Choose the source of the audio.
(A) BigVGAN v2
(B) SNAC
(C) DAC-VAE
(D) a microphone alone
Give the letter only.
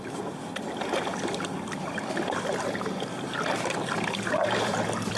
D